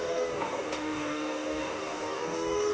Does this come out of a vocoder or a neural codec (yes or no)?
yes